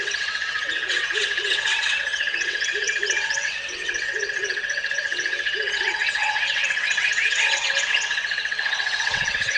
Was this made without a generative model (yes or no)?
no